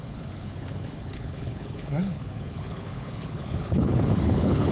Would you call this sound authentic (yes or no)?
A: no